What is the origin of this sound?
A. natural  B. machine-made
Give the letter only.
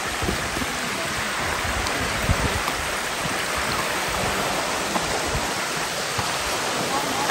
B